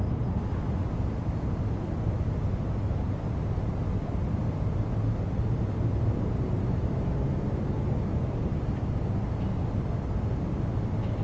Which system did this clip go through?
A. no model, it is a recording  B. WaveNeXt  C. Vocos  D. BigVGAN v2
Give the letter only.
A